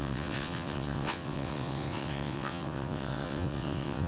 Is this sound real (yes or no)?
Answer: no